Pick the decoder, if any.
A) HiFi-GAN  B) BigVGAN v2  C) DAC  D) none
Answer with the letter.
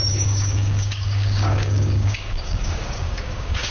C